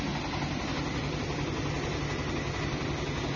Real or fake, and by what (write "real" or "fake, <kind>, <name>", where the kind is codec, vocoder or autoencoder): real